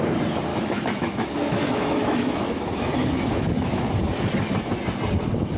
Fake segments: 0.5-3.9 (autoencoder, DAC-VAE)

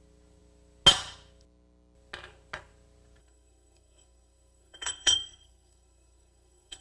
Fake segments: 3.2-6.8 (codec, SNAC)

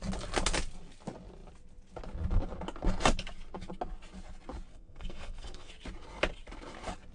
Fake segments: 4.7-5.7 (codec, SNAC)

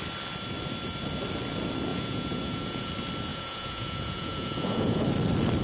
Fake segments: 1.9-2.9 (vocoder, Vocos); 3.3-5.0

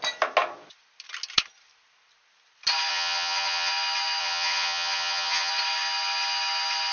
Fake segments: 2.9-3.7 (vocoder, HiFi-GAN); 4.2-5.5

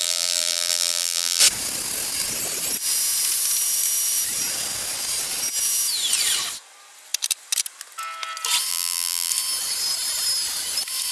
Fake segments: 0.0-1.4 (vocoder, BigVGAN v2); 8.7-9.3